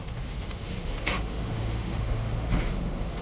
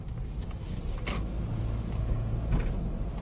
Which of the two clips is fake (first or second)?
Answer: first